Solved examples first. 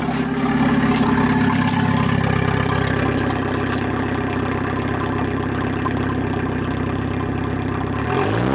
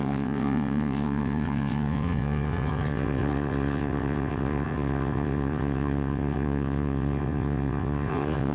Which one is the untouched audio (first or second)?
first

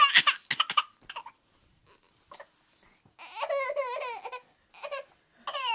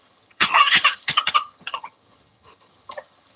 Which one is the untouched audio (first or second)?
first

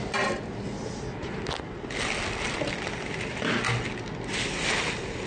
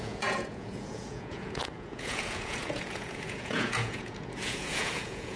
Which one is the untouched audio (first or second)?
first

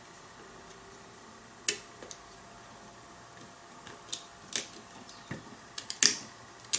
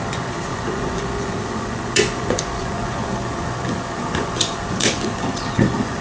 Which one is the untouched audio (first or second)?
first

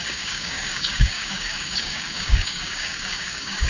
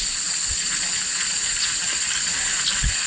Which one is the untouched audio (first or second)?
second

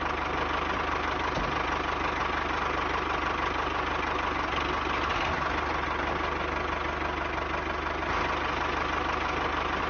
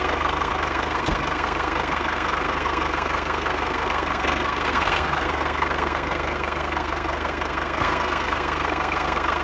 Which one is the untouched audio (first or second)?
first